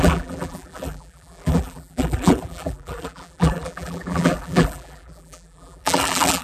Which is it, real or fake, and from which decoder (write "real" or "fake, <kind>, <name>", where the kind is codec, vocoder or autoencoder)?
fake, vocoder, BigVGAN v2